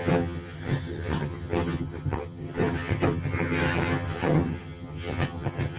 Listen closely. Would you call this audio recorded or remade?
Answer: remade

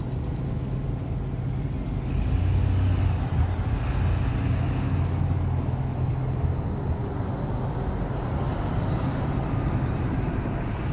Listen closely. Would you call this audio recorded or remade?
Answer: recorded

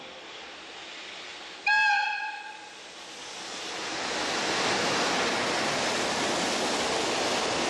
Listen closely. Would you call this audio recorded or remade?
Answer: recorded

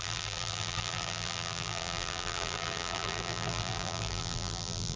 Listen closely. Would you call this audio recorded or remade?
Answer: remade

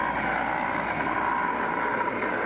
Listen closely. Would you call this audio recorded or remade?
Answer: recorded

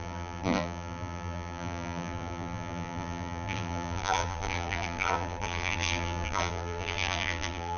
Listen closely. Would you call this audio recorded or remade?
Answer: remade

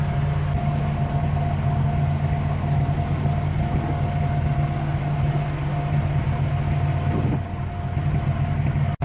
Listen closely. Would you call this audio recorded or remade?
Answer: recorded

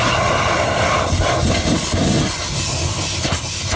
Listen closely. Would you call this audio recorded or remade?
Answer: recorded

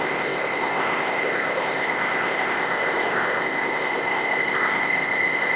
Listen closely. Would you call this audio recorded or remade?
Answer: remade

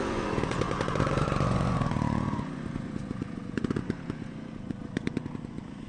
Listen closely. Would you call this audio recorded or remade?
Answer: remade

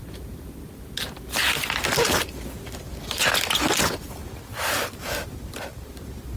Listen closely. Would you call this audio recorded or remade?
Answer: recorded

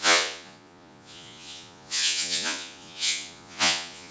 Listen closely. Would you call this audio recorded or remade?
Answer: remade